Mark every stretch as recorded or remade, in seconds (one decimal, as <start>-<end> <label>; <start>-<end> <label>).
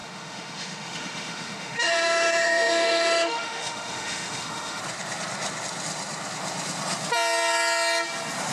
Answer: 0.0-4.8 remade; 4.8-8.5 recorded